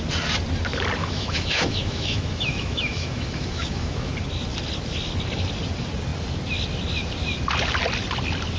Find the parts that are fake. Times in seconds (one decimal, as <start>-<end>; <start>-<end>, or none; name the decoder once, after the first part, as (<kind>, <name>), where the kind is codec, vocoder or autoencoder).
1.0-4.1 (autoencoder, DAC-VAE)